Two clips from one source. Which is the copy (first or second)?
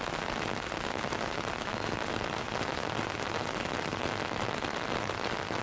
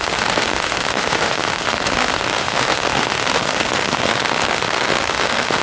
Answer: second